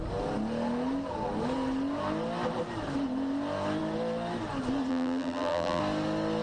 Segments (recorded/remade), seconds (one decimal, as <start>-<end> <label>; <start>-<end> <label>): 0.0-4.9 recorded; 4.9-5.8 remade; 5.8-6.4 recorded